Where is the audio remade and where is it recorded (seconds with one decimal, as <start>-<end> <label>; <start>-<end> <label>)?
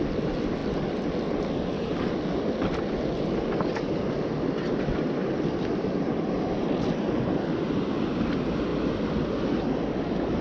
0.0-10.4 recorded